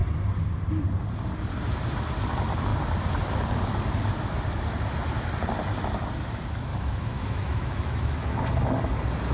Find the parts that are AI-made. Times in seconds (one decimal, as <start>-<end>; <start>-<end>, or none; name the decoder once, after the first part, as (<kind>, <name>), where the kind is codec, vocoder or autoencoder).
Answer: 6.7-8.4 (autoencoder, DAC-VAE)

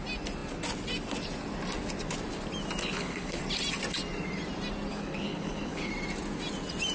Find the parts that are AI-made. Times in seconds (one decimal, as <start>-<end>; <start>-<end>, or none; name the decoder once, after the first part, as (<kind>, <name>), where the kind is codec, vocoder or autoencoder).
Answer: 2.8-3.4 (codec, HILCodec); 4.9-5.9

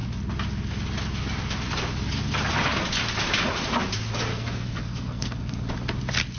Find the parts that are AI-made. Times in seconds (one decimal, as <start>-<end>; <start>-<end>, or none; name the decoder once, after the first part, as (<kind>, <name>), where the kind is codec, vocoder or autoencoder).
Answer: 4.3-5.7 (codec, SNAC)